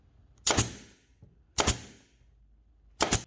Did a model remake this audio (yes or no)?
no